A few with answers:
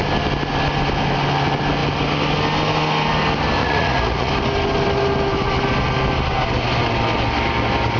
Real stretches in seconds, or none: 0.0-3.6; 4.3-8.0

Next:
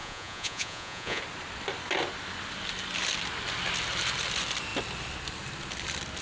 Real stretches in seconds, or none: 1.2-6.2

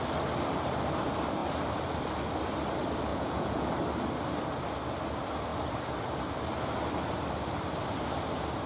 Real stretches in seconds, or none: 0.0-3.1; 3.7-8.7